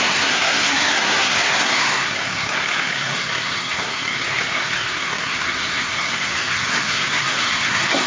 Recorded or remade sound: remade